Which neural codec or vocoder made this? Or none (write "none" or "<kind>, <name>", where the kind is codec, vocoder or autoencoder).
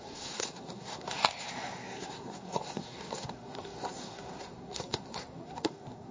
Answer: codec, SNAC